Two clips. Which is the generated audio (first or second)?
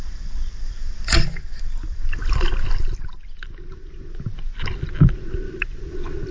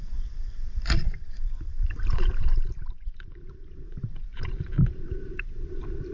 second